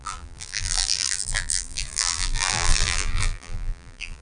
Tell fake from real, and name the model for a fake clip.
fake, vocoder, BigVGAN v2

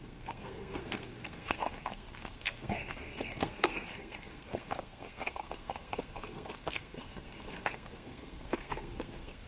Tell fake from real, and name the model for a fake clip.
fake, codec, SNAC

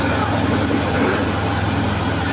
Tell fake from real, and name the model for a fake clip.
real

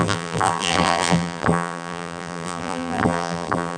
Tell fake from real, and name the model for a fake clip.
fake, vocoder, BigVGAN v2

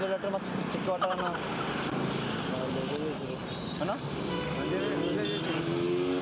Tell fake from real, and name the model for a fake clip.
real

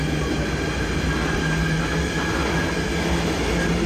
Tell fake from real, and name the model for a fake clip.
real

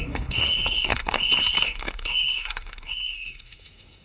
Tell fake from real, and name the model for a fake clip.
fake, codec, SNAC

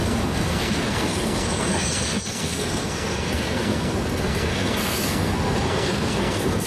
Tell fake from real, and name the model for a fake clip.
fake, codec, SNAC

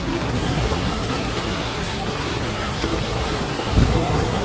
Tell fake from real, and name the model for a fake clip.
fake, codec, SNAC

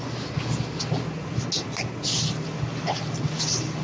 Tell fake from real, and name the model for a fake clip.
real